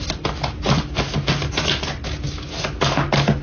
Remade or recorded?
recorded